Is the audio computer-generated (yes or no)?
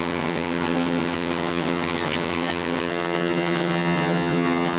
yes